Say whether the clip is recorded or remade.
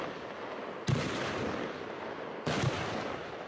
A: recorded